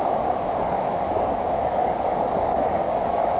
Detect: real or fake fake